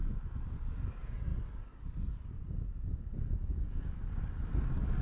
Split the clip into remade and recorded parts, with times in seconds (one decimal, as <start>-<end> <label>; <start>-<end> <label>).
0.0-0.5 remade; 0.5-1.3 recorded; 1.3-2.7 remade; 2.7-3.4 recorded; 3.4-4.3 remade; 4.3-5.0 recorded